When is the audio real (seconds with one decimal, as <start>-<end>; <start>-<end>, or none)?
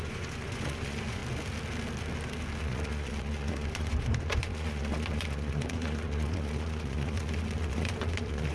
1.2-2.6